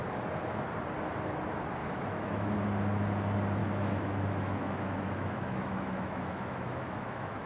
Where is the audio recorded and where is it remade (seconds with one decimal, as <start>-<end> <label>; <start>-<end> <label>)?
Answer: 0.0-1.8 recorded; 1.8-2.5 remade; 2.5-3.6 recorded; 3.6-7.5 remade